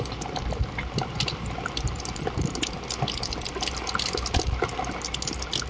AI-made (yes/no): no